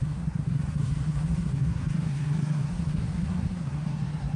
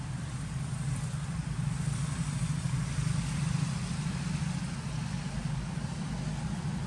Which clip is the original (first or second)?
second